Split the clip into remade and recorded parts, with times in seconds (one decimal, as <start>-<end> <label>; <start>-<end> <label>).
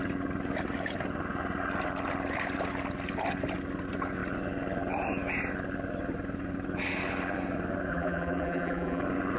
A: 0.0-7.9 recorded; 7.9-9.0 remade; 9.0-9.4 recorded